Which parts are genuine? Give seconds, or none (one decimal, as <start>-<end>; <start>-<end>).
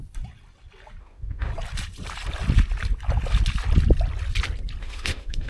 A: 0.0-1.0; 1.5-4.8